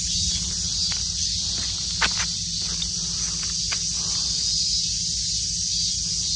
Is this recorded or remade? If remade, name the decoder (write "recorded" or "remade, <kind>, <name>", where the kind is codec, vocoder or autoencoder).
recorded